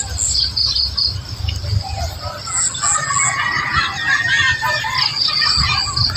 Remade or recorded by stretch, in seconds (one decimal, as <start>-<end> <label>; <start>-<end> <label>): 0.0-6.2 recorded